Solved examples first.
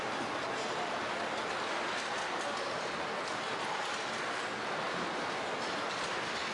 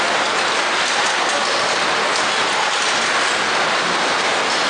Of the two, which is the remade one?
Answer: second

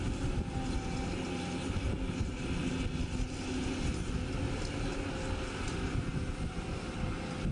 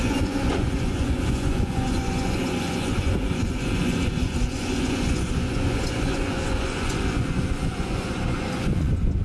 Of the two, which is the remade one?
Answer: second